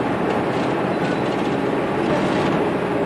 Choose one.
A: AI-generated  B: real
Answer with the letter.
B